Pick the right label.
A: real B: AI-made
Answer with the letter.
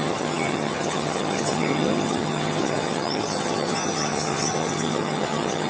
B